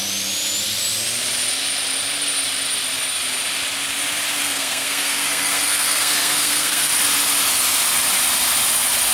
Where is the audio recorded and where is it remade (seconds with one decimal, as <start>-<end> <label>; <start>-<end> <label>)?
0.0-4.4 recorded; 4.4-6.9 remade; 6.9-9.1 recorded